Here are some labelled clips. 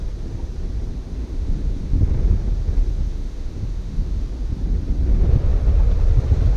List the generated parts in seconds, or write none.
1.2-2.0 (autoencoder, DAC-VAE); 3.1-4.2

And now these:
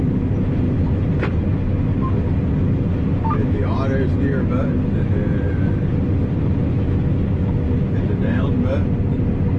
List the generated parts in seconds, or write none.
none

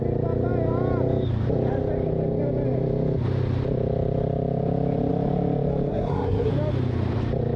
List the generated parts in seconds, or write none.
5.9-6.5 (codec, SNAC)

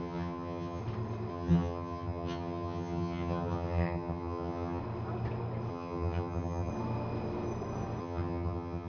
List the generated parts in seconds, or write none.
0.0-0.8 (vocoder, HiFi-GAN); 1.3-4.8; 5.7-6.7; 8.0-8.9

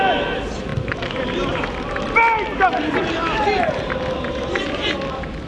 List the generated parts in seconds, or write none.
none

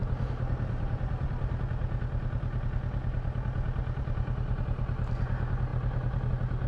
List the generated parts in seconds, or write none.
0.0-1.6 (vocoder, BigVGAN v2); 3.8-4.6

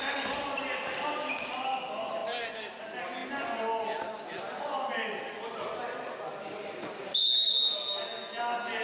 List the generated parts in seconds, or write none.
none